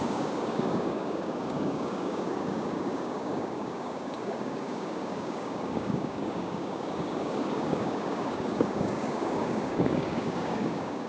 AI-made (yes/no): yes